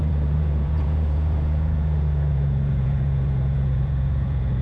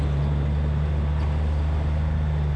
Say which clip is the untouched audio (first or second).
second